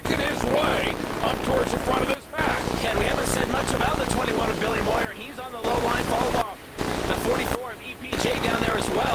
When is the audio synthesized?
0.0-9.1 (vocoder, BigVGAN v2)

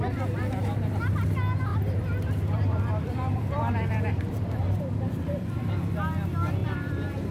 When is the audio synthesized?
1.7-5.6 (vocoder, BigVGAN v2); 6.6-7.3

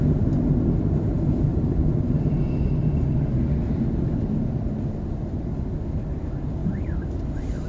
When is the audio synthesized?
1.5-2.3 (vocoder, BigVGAN v2); 6.6-7.1

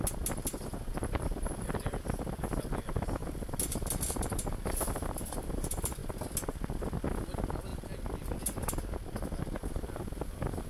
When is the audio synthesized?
none

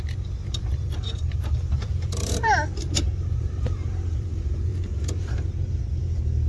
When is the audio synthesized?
0.4-4.3 (vocoder, BigVGAN v2); 4.7-5.5